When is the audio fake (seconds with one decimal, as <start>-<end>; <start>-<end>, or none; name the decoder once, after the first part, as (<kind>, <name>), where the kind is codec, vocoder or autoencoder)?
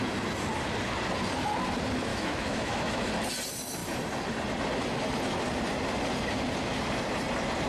2.1-3.1 (autoencoder, DAC-VAE)